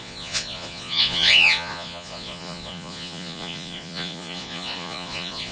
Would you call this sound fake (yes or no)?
yes